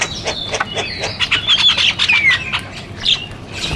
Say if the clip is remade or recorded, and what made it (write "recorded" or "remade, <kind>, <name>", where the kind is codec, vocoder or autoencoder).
recorded